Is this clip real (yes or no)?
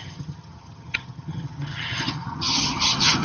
no